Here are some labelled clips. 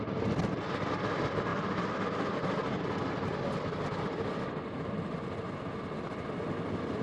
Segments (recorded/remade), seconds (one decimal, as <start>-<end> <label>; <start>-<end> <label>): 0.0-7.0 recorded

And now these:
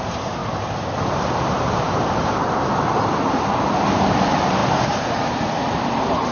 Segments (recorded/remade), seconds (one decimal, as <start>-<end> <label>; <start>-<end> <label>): 0.0-0.4 remade; 0.4-1.0 recorded; 1.0-6.3 remade

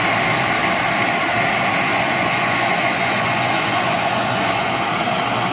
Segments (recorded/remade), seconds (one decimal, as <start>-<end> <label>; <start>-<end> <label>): 0.0-1.9 recorded; 1.9-4.7 remade; 4.7-5.5 recorded

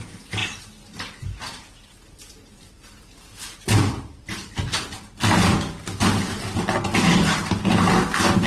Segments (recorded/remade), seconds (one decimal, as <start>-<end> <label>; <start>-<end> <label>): 0.0-4.4 remade; 4.4-7.1 recorded; 7.1-8.5 remade

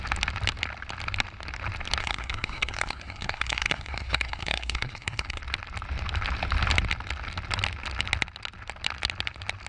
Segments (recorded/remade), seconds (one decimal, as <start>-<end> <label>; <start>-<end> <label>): 0.0-2.0 recorded; 2.0-5.4 remade; 5.4-9.7 recorded

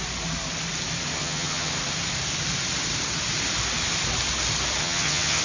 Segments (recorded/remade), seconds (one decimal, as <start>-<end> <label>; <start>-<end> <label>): 0.0-1.2 recorded; 1.2-1.7 remade; 1.7-4.8 recorded; 4.8-5.4 remade